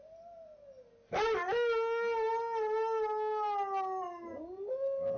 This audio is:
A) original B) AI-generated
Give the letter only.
A